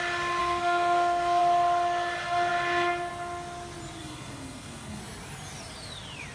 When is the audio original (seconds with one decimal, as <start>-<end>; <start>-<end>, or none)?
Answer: 0.0-0.4; 1.4-4.0; 5.0-6.3